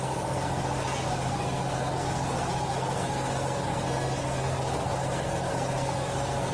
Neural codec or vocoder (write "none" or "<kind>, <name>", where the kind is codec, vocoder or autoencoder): codec, SNAC